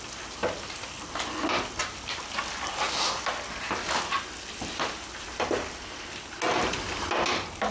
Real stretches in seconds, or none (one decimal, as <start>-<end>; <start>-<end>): 0.0-6.6; 7.1-7.7